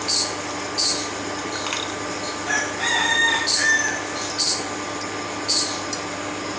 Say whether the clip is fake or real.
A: real